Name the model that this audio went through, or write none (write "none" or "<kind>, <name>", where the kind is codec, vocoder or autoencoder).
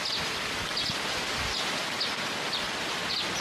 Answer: none